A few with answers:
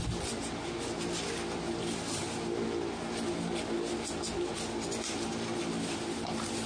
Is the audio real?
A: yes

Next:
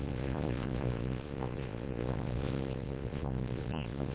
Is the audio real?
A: no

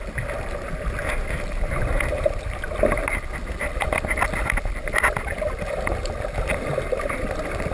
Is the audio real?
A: yes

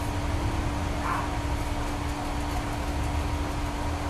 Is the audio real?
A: yes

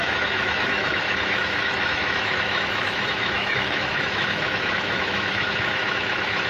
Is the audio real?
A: no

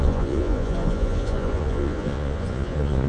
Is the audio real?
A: no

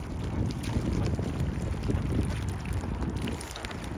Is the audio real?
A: yes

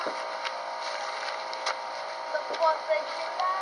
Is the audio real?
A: yes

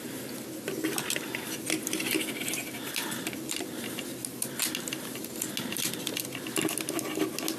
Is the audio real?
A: yes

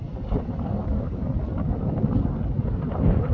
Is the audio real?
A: yes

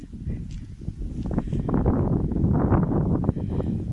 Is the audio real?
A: yes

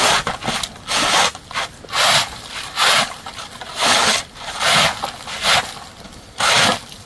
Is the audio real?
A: yes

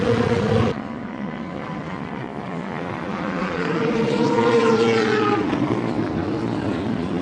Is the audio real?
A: no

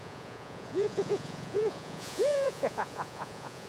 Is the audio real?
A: no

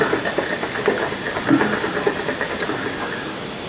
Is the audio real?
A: yes